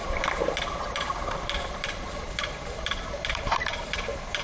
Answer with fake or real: fake